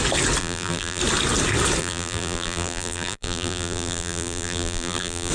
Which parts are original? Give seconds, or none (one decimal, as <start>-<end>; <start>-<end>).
0.0-0.4; 1.0-1.8